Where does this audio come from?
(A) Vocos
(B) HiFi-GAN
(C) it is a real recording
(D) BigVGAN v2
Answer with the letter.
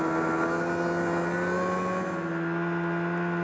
C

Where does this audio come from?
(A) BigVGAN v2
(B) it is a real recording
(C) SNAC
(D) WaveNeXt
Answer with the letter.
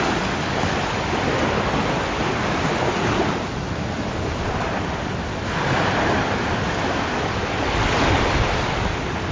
B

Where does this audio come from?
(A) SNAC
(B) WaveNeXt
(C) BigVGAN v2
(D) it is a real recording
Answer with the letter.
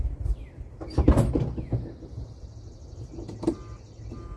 D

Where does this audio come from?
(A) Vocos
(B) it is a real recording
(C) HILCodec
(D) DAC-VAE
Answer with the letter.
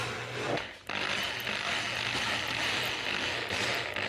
B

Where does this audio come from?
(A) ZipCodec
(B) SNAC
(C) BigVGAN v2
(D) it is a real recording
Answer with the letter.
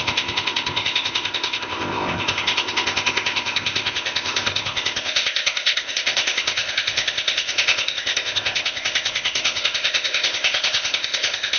A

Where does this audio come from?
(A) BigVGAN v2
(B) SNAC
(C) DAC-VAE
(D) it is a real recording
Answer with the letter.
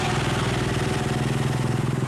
D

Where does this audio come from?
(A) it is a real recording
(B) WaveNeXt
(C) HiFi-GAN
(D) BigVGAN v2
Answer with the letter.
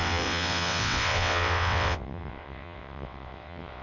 B